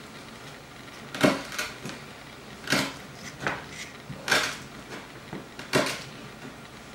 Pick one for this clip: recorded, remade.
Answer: recorded